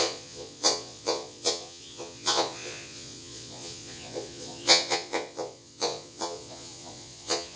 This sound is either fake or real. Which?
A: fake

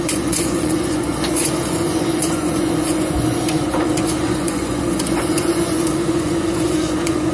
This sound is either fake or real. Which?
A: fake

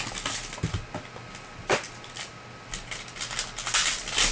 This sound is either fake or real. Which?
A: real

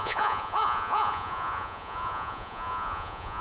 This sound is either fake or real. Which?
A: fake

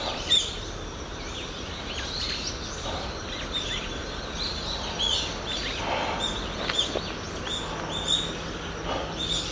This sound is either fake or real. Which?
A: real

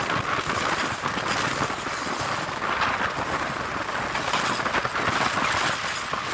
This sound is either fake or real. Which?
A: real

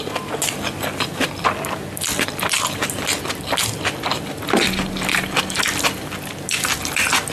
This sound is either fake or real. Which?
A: real